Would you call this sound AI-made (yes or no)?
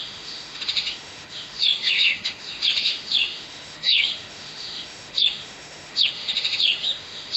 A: yes